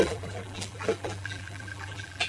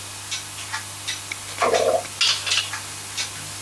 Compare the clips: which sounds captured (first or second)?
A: second